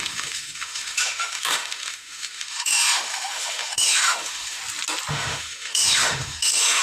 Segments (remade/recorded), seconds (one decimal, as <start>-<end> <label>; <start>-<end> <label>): 0.0-4.6 remade; 4.6-5.1 recorded; 5.1-6.8 remade